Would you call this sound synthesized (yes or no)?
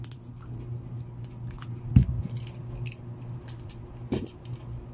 no